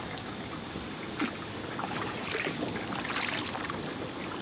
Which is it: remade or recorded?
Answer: recorded